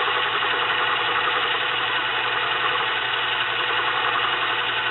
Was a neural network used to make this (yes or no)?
no